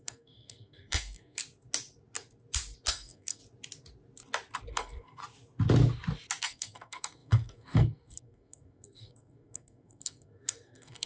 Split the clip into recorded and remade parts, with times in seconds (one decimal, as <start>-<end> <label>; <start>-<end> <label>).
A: 0.0-1.4 remade; 1.4-2.9 recorded; 2.9-3.4 remade; 3.4-4.7 recorded; 4.7-5.2 remade; 5.2-6.4 recorded; 6.4-11.1 remade